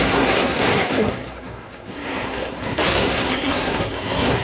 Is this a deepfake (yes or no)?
yes